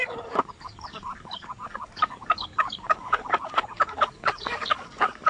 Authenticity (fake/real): fake